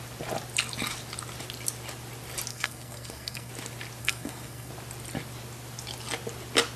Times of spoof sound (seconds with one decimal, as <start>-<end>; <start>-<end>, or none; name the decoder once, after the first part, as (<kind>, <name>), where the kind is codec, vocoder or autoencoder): 2.5-3.5 (codec, SNAC); 4.0-4.7